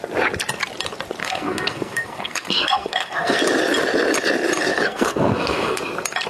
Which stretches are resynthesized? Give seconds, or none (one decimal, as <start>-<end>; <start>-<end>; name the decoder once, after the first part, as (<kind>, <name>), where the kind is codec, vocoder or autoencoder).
1.2-3.4 (codec, SNAC); 4.7-5.8